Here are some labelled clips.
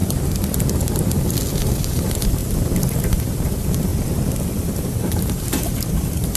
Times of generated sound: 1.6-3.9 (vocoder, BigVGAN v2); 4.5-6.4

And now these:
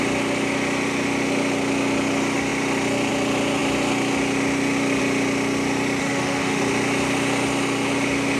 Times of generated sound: 6.0-6.6 (autoencoder, DAC-VAE)

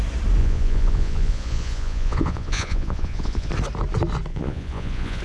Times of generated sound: 0.4-3.5 (vocoder, Vocos); 4.3-5.2

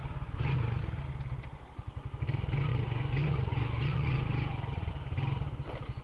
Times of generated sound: 0.0-0.8 (vocoder, Vocos); 2.7-4.9

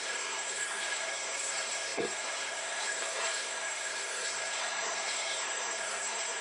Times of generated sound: 0.0-6.4 (codec, SNAC)

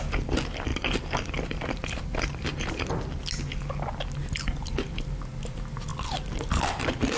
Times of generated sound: 0.7-2.7 (vocoder, BigVGAN v2); 5.9-6.7

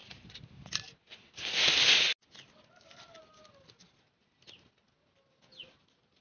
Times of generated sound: none